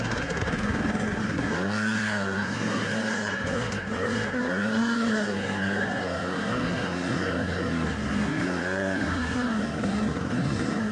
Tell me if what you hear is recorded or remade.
remade